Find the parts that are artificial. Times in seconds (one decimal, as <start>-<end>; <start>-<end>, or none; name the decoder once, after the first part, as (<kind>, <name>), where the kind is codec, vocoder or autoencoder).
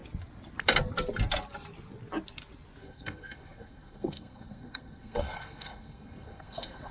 2.8-6.9 (codec, SNAC)